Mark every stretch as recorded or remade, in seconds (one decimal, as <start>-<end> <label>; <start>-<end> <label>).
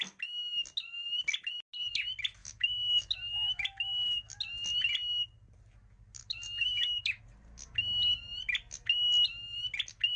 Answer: 0.0-2.4 recorded; 2.4-4.3 remade; 4.3-6.2 recorded; 6.2-7.2 remade; 7.2-10.2 recorded